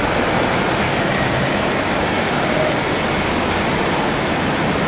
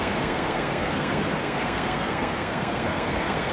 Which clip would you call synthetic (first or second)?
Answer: second